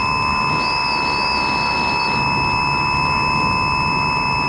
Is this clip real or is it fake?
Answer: real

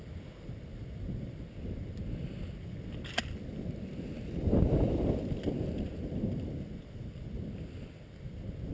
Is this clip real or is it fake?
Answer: real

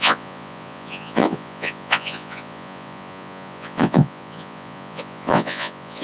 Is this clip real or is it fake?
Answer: fake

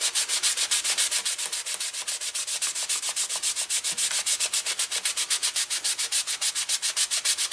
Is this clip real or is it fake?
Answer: real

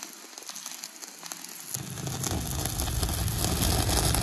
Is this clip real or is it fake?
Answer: real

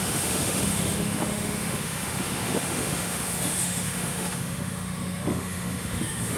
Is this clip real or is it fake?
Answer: fake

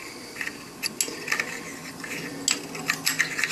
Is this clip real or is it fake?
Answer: real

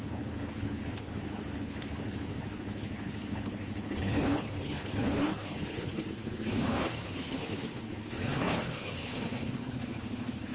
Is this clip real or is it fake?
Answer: fake